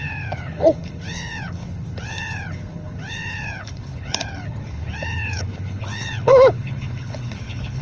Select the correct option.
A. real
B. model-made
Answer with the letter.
B